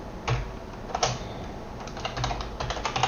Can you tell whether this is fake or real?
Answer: real